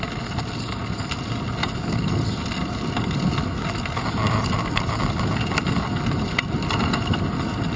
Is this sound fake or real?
real